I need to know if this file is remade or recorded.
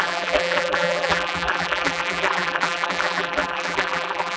remade